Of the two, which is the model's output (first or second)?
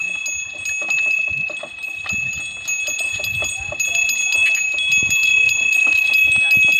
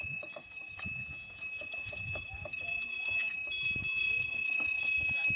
second